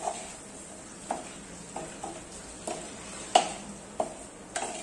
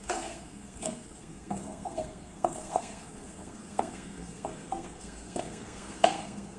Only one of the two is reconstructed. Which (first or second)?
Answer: second